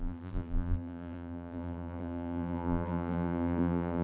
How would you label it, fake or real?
fake